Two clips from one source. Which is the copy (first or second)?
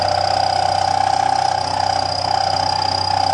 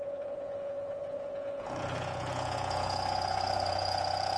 second